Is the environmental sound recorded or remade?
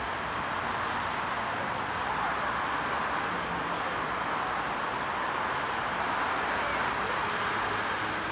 recorded